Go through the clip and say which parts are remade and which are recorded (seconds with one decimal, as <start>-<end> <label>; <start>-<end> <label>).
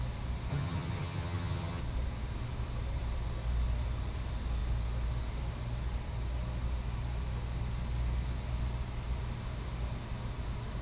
0.0-0.5 recorded; 0.5-1.8 remade; 1.8-10.8 recorded